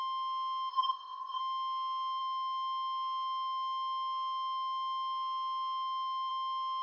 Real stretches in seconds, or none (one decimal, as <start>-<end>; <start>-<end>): 0.0-0.7; 1.4-6.8